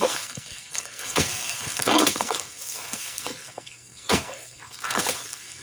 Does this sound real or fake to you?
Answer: fake